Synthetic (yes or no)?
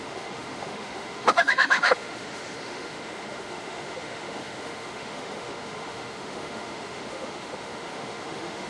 yes